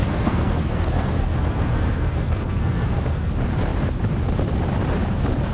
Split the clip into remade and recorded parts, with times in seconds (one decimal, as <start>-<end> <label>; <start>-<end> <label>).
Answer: 0.0-3.3 remade; 3.3-5.5 recorded

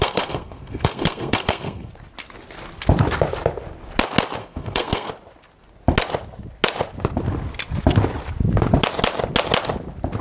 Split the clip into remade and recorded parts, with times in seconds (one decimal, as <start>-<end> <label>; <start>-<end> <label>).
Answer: 0.0-1.9 remade; 1.9-4.4 recorded; 4.4-5.1 remade; 5.1-10.2 recorded

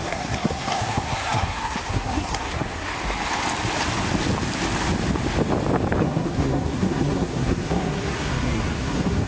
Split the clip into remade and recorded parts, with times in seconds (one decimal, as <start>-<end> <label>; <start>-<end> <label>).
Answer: 0.0-2.9 remade; 2.9-6.0 recorded; 6.0-9.3 remade

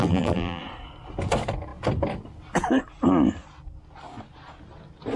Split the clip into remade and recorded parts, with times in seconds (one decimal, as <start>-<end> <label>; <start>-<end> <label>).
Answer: 0.0-0.6 remade; 0.6-5.2 recorded